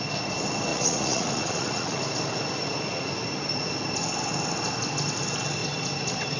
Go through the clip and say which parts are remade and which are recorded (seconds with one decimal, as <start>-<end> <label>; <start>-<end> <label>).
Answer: 0.0-0.7 recorded; 0.7-2.0 remade; 2.0-6.4 recorded